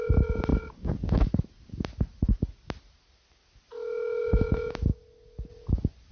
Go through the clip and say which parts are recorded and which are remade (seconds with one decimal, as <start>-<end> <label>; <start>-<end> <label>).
0.0-6.1 recorded